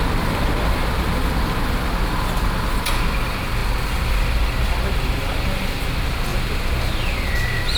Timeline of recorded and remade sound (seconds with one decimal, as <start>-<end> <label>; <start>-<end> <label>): 0.0-7.8 recorded

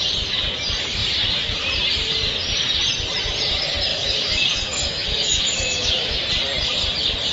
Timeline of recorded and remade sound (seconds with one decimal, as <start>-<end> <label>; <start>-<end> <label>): 0.0-3.9 recorded; 3.9-6.2 remade; 6.2-7.3 recorded

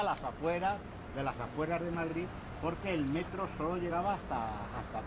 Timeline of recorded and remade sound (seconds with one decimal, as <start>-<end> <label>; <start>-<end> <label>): 0.0-5.1 recorded

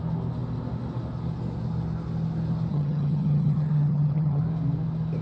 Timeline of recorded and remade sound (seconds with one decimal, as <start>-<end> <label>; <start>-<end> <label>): 0.0-2.7 recorded; 2.7-4.4 remade; 4.4-5.2 recorded